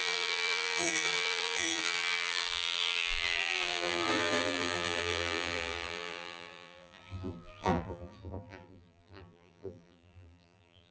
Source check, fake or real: fake